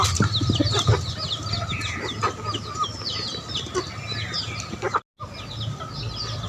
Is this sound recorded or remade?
recorded